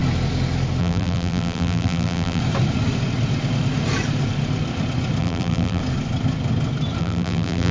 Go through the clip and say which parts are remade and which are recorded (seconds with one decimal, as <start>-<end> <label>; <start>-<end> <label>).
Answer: 0.0-0.8 recorded; 0.8-2.4 remade; 2.4-5.2 recorded; 5.2-5.8 remade; 5.8-7.0 recorded; 7.0-7.7 remade